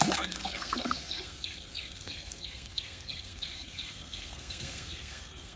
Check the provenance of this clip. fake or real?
fake